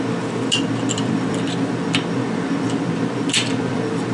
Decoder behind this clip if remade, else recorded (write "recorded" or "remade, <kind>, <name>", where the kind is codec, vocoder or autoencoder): remade, vocoder, BigVGAN v2